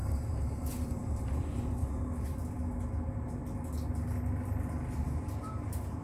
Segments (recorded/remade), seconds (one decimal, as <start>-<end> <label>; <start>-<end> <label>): 0.0-1.8 remade; 1.8-5.1 recorded; 5.1-6.0 remade